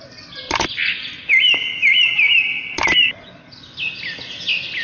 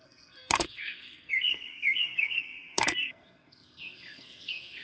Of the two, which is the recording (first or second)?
first